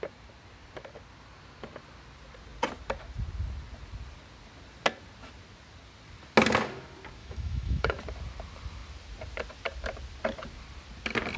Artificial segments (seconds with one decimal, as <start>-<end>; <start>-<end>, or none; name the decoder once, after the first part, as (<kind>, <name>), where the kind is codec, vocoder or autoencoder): 7.2-8.0 (autoencoder, DAC-VAE)